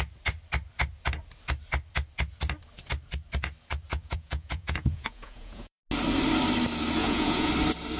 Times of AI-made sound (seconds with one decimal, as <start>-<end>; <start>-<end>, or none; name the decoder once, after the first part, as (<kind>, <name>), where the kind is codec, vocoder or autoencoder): 3.9-5.8 (vocoder, Vocos); 7.0-7.5